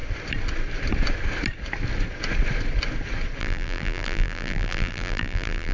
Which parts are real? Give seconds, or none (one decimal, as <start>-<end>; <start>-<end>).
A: 0.0-3.4